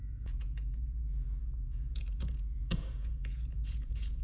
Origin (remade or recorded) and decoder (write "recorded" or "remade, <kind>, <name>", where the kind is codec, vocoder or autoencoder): remade, vocoder, Vocos